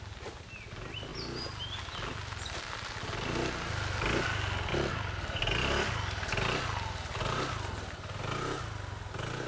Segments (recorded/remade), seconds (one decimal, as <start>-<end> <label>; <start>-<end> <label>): 0.0-9.5 recorded